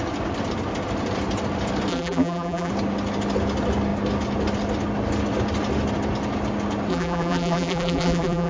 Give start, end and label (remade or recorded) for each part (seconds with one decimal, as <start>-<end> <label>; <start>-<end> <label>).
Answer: 0.0-1.9 recorded; 1.9-2.7 remade; 2.7-6.9 recorded; 6.9-8.5 remade